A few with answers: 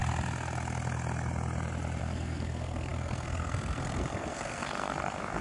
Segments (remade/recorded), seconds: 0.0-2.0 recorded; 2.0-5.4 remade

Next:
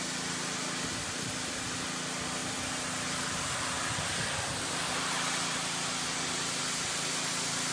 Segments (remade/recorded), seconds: 0.0-7.7 recorded

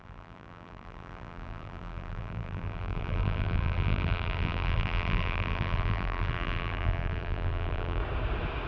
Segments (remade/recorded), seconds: 0.0-8.0 remade; 8.0-8.7 recorded

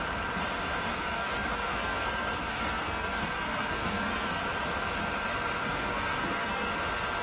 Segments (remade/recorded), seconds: 0.0-0.9 recorded; 0.9-4.4 remade; 4.4-5.6 recorded; 5.6-6.7 remade; 6.7-7.2 recorded

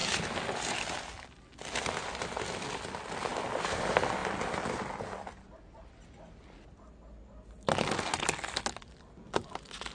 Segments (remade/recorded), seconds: 0.0-9.9 recorded

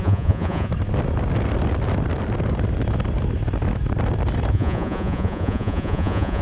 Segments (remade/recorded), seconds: 0.0-0.7 remade; 0.7-4.5 recorded; 4.5-6.4 remade

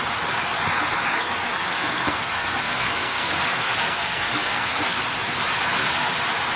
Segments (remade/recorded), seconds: 0.0-1.1 recorded; 1.1-5.0 remade; 5.0-5.5 recorded; 5.5-6.1 remade; 6.1-6.6 recorded

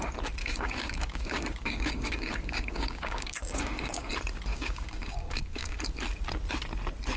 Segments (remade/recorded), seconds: 0.0-0.4 recorded; 0.4-4.1 remade; 4.1-4.5 recorded; 4.5-5.8 remade; 5.8-7.2 recorded